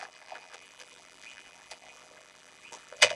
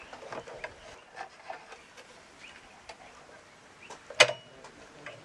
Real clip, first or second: second